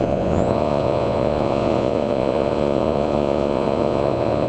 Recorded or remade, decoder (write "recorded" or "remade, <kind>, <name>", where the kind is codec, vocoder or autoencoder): remade, vocoder, Vocos